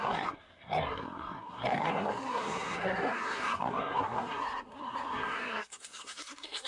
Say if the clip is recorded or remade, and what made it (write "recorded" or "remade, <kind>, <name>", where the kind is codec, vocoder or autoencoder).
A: remade, codec, SNAC